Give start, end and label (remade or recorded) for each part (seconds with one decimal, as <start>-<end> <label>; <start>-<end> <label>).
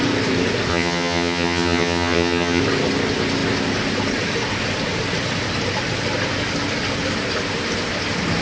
0.0-0.7 recorded; 0.7-2.6 remade; 2.6-8.4 recorded